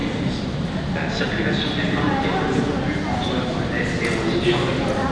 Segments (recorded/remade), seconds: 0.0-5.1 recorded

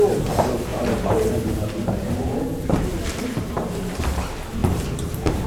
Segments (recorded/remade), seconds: 0.0-0.7 recorded; 0.7-4.0 remade; 4.0-4.6 recorded; 4.6-5.5 remade

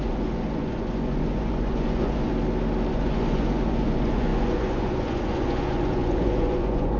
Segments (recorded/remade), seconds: 0.0-2.3 remade; 2.3-2.9 recorded; 2.9-7.0 remade

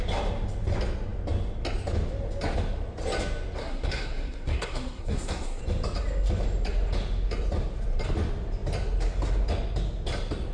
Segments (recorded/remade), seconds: 0.0-3.6 recorded; 3.6-5.6 remade; 5.6-10.5 recorded

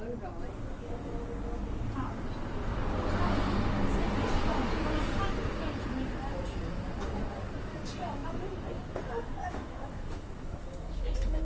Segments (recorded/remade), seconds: 0.0-9.6 recorded; 9.6-11.4 remade

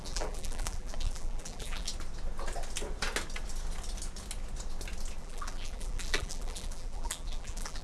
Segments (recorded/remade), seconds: 0.0-1.9 remade; 1.9-5.2 recorded; 5.2-7.8 remade